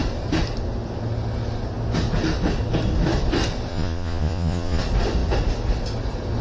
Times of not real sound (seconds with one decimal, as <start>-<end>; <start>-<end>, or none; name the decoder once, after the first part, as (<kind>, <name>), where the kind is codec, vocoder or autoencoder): 3.7-4.8 (vocoder, Vocos)